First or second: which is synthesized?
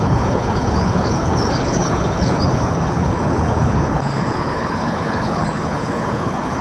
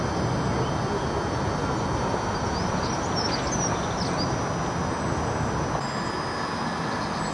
first